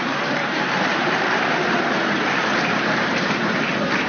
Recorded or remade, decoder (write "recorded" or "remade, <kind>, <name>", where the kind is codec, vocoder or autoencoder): remade, vocoder, BigVGAN v2